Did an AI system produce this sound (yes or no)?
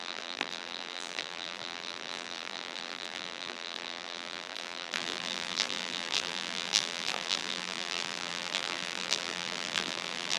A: yes